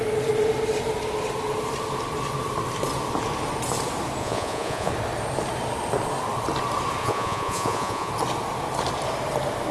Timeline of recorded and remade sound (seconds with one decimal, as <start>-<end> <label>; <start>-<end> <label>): 0.0-4.2 recorded; 4.2-4.9 remade; 4.9-7.0 recorded; 7.0-8.1 remade; 8.1-9.7 recorded